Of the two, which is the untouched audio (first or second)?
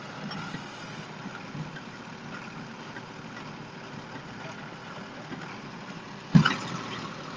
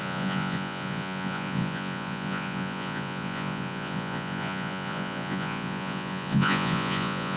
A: first